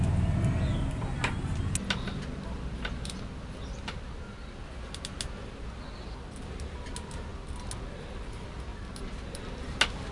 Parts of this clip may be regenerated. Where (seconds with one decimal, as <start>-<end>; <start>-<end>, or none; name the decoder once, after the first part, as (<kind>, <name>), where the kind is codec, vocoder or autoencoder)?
none